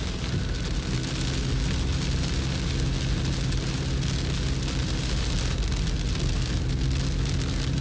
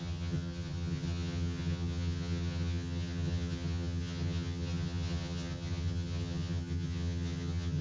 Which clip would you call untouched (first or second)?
first